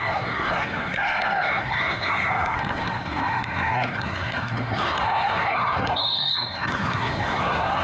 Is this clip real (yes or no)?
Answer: no